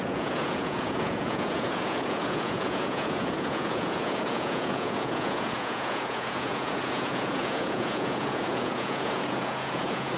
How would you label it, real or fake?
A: fake